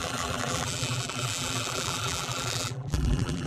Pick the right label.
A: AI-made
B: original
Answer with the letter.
A